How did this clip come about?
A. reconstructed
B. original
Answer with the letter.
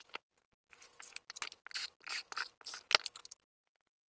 B